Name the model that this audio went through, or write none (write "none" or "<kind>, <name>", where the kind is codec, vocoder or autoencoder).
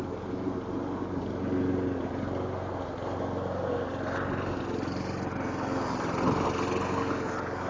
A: none